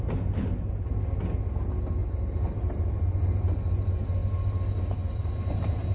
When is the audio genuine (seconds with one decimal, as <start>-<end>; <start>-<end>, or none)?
0.0-2.0; 3.2-5.9